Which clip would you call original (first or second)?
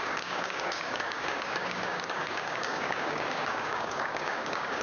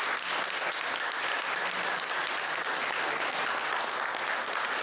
second